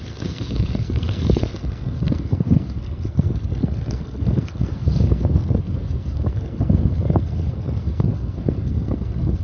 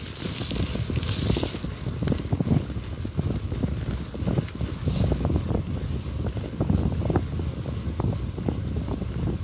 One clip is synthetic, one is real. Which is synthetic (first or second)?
first